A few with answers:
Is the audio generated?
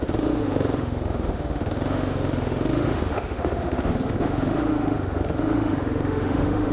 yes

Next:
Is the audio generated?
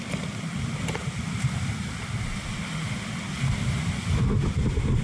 no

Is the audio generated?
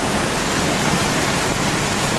no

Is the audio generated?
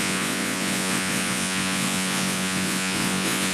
yes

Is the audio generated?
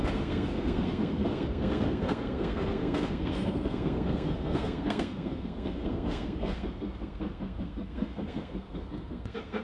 yes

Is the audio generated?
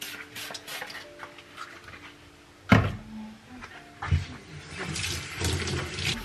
no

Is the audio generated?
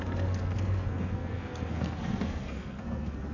yes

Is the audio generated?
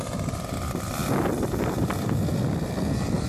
yes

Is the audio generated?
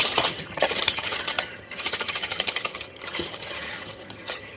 yes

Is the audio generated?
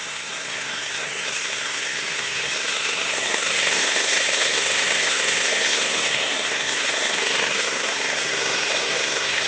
yes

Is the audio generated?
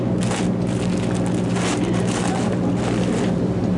no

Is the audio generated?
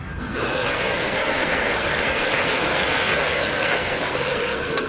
yes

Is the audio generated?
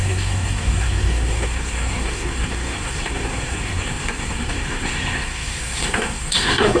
yes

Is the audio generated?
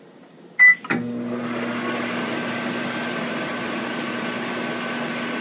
no